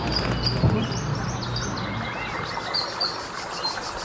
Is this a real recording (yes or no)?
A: yes